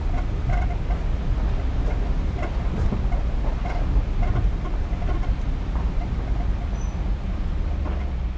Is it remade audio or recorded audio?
recorded